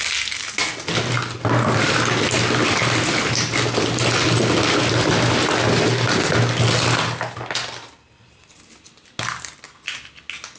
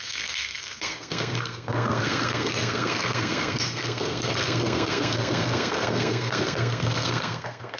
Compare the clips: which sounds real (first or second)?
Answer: first